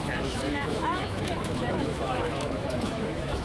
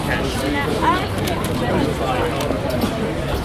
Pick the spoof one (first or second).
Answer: first